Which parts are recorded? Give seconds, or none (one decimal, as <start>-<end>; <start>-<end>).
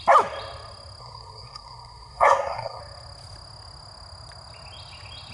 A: 0.0-1.0; 2.8-5.3